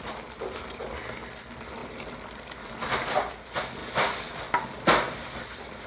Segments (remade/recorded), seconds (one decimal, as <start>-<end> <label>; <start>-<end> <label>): 0.0-5.9 recorded